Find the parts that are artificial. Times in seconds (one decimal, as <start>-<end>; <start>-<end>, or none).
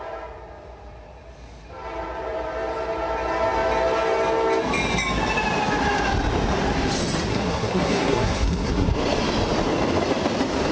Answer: 7.3-8.9